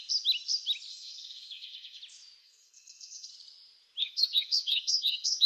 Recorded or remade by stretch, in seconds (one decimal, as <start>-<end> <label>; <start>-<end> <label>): 0.0-0.9 recorded; 0.9-2.0 remade; 2.0-2.4 recorded; 2.4-3.3 remade; 3.3-4.0 recorded; 4.0-5.5 remade